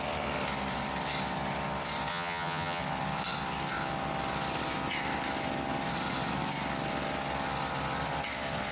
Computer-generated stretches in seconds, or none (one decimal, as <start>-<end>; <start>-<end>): 2.1-2.8